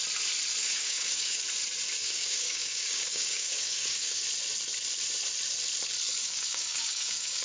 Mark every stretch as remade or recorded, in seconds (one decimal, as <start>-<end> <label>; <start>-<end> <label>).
0.0-0.6 recorded; 0.6-1.4 remade; 1.4-2.0 recorded; 2.0-4.2 remade; 4.2-6.2 recorded; 6.2-7.4 remade